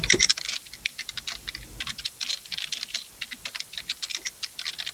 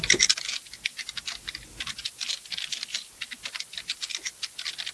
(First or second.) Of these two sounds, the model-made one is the first